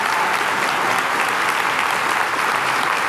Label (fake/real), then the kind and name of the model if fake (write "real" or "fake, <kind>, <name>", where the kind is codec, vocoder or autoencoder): real